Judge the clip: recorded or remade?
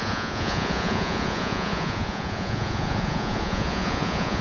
remade